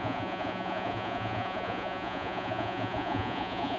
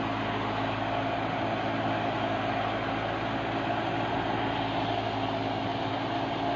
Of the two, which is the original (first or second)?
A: second